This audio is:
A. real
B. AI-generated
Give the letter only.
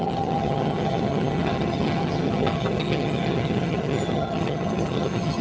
B